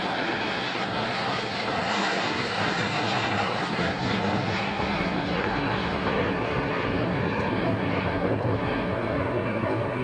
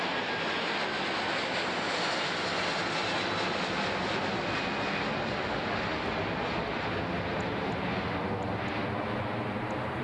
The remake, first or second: first